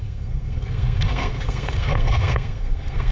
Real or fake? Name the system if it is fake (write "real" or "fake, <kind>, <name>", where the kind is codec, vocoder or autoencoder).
fake, codec, SNAC